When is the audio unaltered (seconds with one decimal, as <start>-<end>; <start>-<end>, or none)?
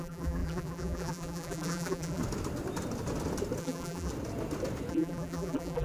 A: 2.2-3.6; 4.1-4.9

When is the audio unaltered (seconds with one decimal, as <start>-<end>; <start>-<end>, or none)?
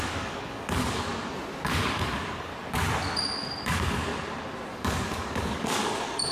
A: 1.1-1.7; 2.5-3.6; 4.1-4.7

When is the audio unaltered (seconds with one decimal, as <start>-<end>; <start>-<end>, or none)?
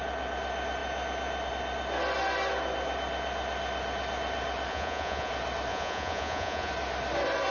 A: 0.0-4.7; 5.3-5.7; 6.7-7.5